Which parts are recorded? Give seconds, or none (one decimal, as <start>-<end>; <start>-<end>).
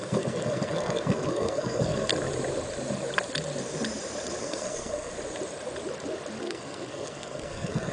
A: 2.1-4.4; 5.1-6.4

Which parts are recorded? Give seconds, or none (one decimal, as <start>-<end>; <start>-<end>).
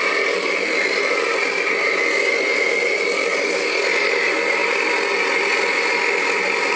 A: 0.0-6.8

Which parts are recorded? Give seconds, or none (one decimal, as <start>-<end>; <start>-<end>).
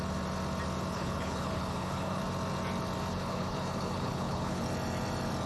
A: 0.0-0.9; 2.2-3.1; 4.6-5.5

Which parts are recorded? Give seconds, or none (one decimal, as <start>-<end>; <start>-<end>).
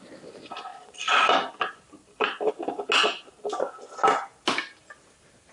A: 0.0-0.7; 2.8-5.5